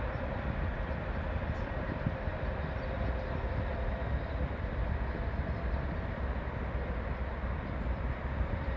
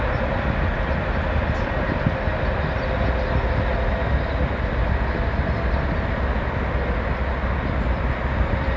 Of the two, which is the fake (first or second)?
first